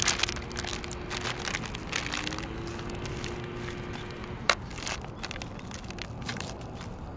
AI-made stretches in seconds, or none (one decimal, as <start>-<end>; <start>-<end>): 4.2-4.7; 6.3-6.8